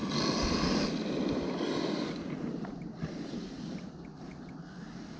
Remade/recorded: recorded